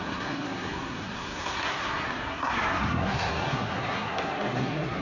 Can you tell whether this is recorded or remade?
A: remade